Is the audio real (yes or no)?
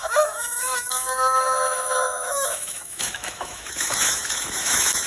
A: no